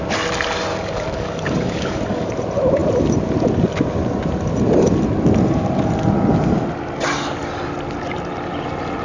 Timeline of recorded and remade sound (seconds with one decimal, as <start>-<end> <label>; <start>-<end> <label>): 0.0-0.7 recorded; 0.7-2.3 remade; 2.3-9.0 recorded